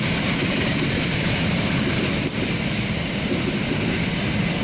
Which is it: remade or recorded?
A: recorded